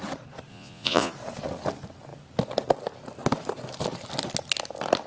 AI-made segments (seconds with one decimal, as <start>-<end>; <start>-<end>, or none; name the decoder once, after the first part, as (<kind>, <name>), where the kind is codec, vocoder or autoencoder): 0.5-1.1 (vocoder, Vocos)